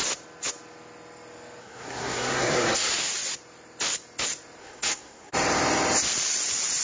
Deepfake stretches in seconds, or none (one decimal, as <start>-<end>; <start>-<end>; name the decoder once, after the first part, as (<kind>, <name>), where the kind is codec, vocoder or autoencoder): 1.6-2.9 (codec, SNAC); 4.6-5.3